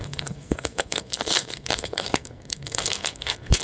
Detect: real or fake fake